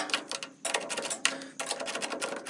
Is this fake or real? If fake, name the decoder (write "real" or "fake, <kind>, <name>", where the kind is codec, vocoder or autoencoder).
real